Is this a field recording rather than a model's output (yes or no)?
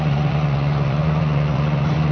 no